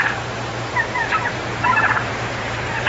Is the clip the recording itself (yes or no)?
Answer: no